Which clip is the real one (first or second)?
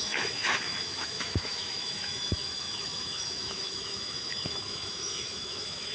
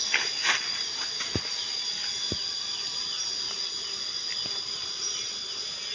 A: second